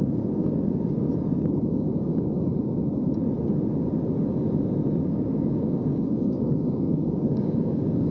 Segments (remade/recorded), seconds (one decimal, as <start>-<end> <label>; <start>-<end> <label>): 0.0-2.5 remade; 2.5-5.0 recorded; 5.0-8.1 remade